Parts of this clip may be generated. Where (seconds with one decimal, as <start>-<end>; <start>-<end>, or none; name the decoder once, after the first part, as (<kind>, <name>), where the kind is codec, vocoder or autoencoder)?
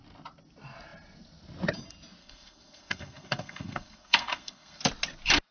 2.2-4.8 (codec, SNAC)